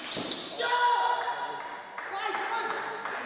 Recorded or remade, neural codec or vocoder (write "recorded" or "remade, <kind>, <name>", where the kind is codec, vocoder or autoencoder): recorded